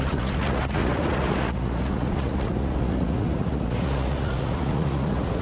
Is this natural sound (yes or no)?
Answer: no